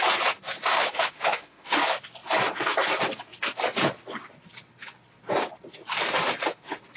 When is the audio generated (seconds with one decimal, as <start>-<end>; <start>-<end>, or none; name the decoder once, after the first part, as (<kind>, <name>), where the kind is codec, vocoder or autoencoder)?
0.7-1.8 (autoencoder, DAC-VAE)